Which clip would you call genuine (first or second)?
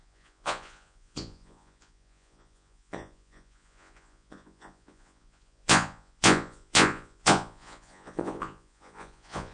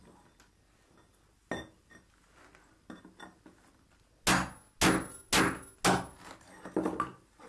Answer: second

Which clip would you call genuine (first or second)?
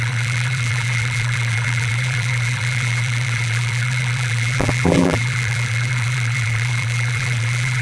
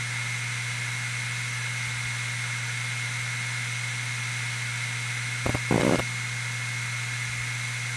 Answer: second